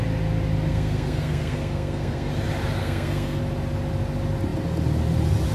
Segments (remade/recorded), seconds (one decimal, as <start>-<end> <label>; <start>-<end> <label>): 0.0-0.7 recorded; 0.7-2.3 remade; 2.3-2.8 recorded; 2.8-3.4 remade; 3.4-5.5 recorded